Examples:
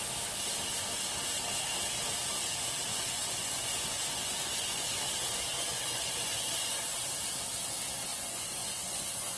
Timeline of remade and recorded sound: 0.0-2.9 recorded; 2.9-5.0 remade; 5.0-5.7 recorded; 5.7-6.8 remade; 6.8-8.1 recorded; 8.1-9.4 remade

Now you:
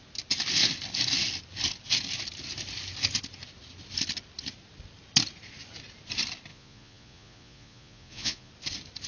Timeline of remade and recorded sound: 0.0-6.5 recorded; 6.5-8.5 remade; 8.5-9.1 recorded

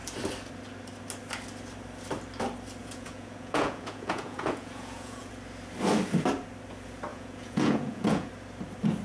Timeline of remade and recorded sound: 0.0-2.8 recorded; 2.8-5.3 remade; 5.3-7.1 recorded; 7.1-8.3 remade; 8.3-9.0 recorded